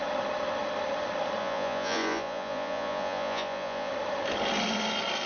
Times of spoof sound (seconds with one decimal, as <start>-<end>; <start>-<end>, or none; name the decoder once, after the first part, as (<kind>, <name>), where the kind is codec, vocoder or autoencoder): 1.4-3.9 (vocoder, Vocos)